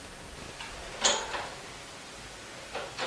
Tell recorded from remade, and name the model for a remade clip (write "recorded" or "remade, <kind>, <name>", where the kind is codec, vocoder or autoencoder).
recorded